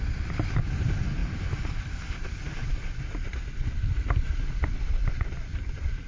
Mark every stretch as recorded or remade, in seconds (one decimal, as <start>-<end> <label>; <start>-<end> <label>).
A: 0.0-6.1 recorded